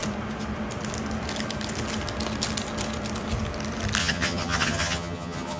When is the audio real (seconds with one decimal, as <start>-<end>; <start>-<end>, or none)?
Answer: 0.0-4.0